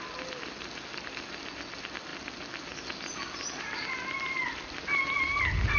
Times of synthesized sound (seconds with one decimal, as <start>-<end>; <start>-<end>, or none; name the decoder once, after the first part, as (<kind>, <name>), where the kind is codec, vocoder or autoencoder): none